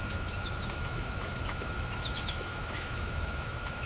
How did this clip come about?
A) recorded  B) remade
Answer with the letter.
B